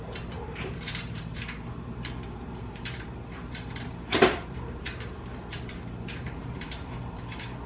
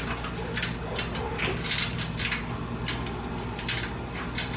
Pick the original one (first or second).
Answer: second